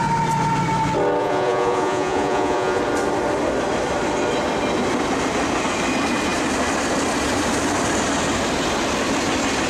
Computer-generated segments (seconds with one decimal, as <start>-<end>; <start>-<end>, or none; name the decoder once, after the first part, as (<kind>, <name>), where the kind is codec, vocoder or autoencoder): 1.2-2.8 (vocoder, Vocos)